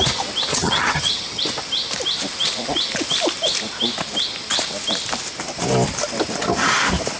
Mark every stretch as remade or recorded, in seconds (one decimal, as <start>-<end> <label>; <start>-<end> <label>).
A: 0.0-0.5 recorded; 0.5-1.4 remade; 1.4-7.2 recorded